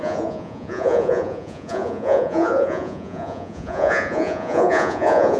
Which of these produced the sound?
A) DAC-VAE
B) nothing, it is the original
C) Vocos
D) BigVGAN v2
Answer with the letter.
C